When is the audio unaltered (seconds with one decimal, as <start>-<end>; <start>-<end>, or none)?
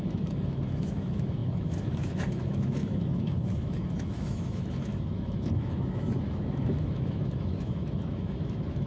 none